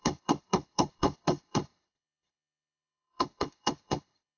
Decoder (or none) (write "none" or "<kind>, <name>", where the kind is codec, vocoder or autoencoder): codec, HILCodec